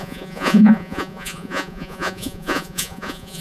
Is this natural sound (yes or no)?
no